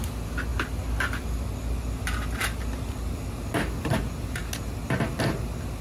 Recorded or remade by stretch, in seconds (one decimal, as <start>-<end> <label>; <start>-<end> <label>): 0.0-5.8 recorded